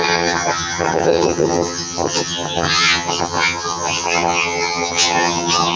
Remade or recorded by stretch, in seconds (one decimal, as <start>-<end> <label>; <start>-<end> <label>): 0.0-5.8 remade